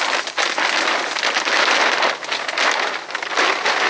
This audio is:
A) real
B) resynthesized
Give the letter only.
A